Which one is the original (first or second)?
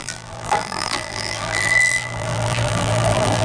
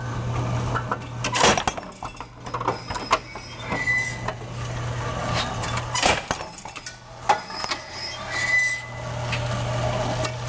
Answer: second